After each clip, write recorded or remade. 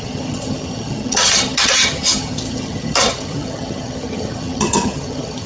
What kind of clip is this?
remade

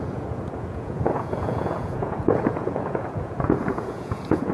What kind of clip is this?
remade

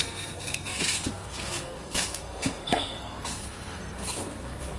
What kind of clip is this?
remade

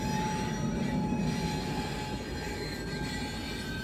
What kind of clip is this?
recorded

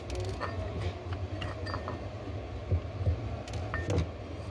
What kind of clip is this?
recorded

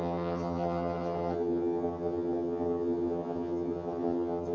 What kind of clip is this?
remade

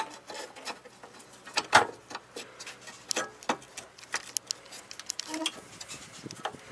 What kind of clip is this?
recorded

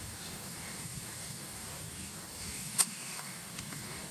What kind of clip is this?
remade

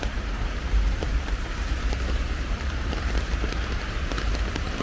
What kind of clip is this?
remade